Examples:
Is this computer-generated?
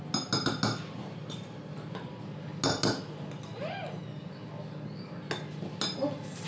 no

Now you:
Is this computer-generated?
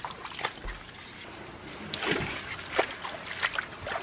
no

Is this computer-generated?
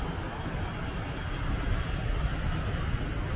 no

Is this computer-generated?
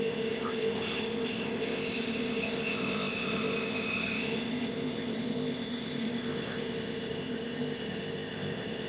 yes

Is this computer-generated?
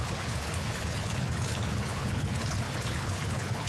yes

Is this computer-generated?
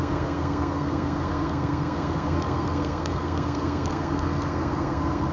yes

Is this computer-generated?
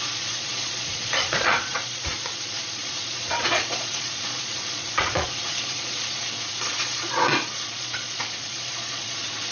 yes